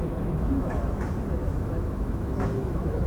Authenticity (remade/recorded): remade